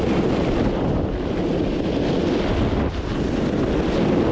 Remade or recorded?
recorded